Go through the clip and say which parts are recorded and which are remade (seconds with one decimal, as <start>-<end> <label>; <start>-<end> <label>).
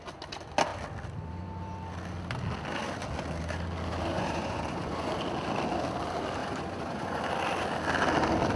0.0-4.1 recorded; 4.1-5.1 remade; 5.1-6.4 recorded; 6.4-7.2 remade; 7.2-8.6 recorded